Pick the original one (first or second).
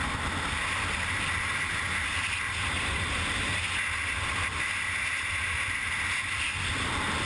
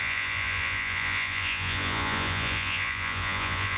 first